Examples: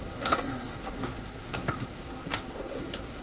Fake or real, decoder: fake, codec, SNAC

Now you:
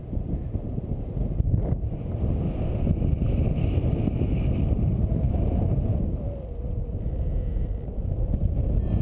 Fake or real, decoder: real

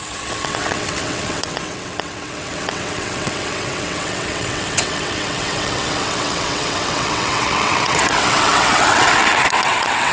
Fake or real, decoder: fake, vocoder, WaveNeXt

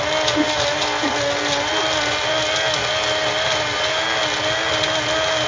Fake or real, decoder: real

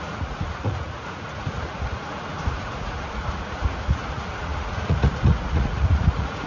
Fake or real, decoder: fake, vocoder, Vocos